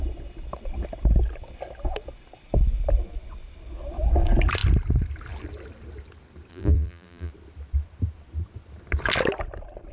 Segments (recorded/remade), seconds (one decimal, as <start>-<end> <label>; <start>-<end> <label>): 0.0-6.5 recorded; 6.5-7.3 remade; 7.3-9.9 recorded